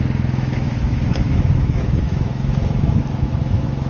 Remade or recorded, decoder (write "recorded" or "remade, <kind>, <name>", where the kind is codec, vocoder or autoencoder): remade, autoencoder, DAC-VAE